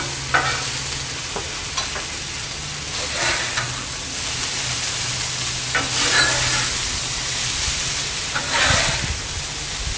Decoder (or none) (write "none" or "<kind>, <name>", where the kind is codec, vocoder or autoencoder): none